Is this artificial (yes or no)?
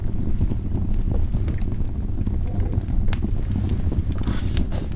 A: no